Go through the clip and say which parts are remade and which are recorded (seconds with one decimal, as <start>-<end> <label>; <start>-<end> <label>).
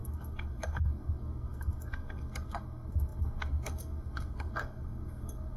0.0-5.6 remade